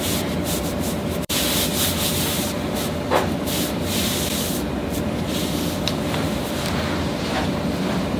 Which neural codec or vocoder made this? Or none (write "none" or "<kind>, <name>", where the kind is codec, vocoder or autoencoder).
vocoder, BigVGAN v2